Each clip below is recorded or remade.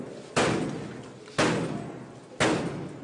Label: recorded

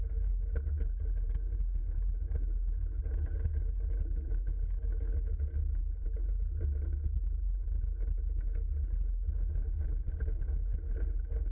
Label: recorded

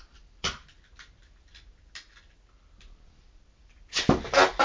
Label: recorded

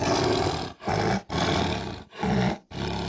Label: recorded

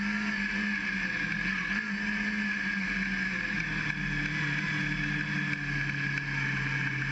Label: recorded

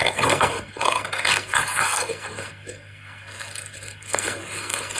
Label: remade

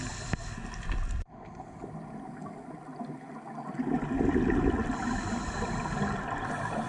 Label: recorded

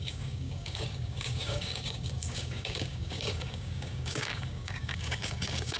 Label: remade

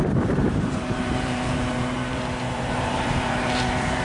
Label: remade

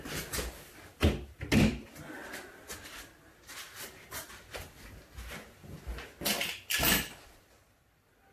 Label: recorded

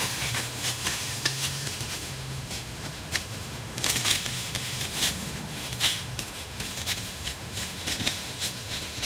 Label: remade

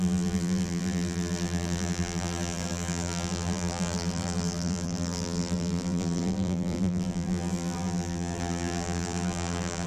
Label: remade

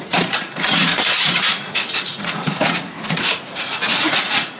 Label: remade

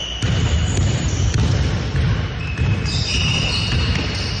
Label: recorded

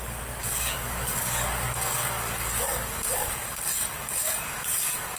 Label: remade